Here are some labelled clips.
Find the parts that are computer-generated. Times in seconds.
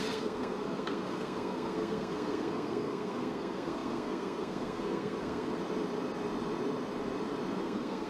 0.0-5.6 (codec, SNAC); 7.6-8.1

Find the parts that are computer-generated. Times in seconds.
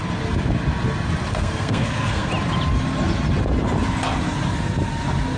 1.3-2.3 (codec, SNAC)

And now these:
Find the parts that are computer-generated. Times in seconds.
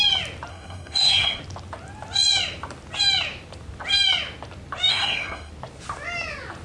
0.5-1.4 (codec, SNAC); 4.9-5.5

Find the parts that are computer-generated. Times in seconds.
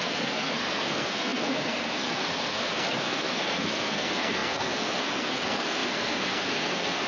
0.0-7.1 (codec, SNAC)